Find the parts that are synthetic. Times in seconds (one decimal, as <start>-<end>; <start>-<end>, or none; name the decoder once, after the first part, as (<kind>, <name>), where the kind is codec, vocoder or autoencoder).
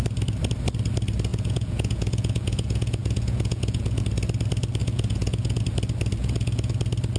1.3-4.0 (vocoder, Vocos); 4.8-5.6; 6.2-6.7